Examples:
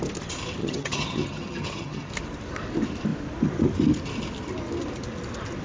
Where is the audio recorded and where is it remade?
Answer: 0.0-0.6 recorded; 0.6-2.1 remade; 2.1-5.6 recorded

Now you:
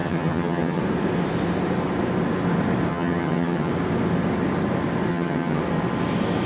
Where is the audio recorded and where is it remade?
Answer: 0.0-0.8 remade; 0.8-2.9 recorded; 2.9-3.7 remade; 3.7-5.1 recorded; 5.1-5.6 remade; 5.6-6.5 recorded

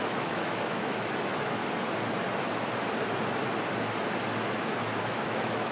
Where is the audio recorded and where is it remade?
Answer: 0.0-1.6 remade; 1.6-5.0 recorded; 5.0-5.7 remade

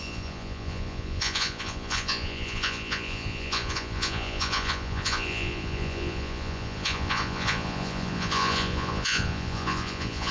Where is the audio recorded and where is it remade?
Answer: 0.0-10.3 remade

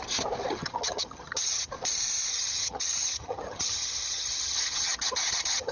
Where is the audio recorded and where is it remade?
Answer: 0.0-0.6 recorded; 0.6-1.7 remade; 1.7-2.3 recorded; 2.3-5.7 remade

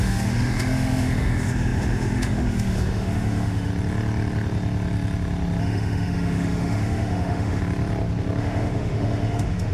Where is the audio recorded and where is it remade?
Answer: 0.0-3.7 remade; 3.7-5.6 recorded; 5.6-7.6 remade; 7.6-8.4 recorded; 8.4-9.7 remade

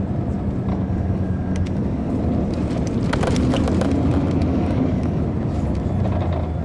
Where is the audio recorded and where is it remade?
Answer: 0.0-0.7 recorded; 0.7-2.1 remade; 2.1-4.5 recorded; 4.5-5.2 remade; 5.2-6.6 recorded